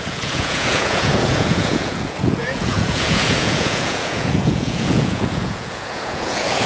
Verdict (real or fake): fake